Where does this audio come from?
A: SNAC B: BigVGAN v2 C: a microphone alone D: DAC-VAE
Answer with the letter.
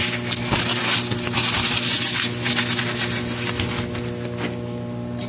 C